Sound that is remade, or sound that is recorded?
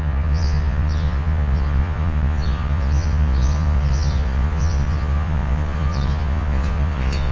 remade